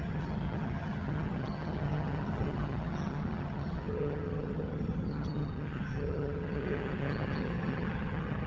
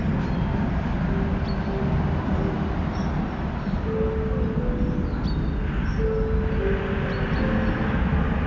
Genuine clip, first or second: second